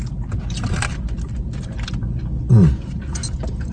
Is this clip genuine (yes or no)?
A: yes